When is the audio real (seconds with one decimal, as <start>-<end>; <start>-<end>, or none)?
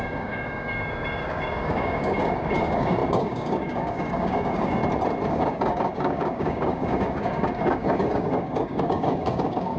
4.8-5.3